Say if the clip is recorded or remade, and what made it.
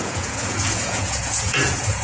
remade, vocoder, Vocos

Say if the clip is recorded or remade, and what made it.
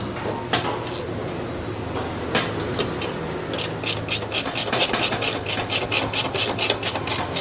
recorded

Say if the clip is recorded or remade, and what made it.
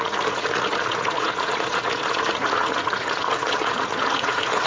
remade, vocoder, Vocos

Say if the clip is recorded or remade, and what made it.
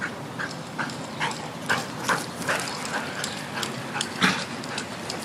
recorded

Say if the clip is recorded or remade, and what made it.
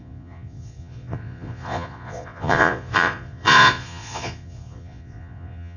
remade, vocoder, Vocos